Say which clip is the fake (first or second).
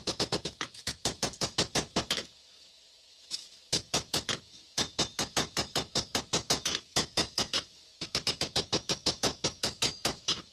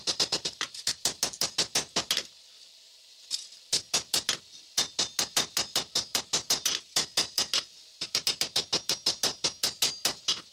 first